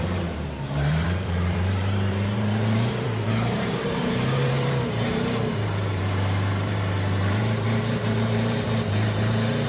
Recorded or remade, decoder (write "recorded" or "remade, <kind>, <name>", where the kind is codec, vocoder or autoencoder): remade, vocoder, BigVGAN v2